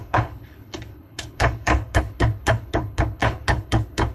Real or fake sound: fake